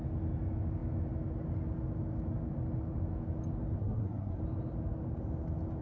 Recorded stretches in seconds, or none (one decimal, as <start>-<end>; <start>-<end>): 0.0-3.8; 4.4-5.8